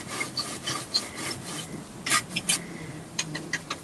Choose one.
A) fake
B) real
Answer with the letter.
B